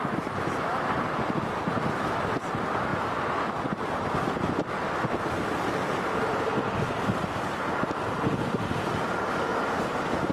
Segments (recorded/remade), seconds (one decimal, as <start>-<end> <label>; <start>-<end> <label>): 0.0-2.9 remade; 2.9-4.4 recorded; 4.4-10.3 remade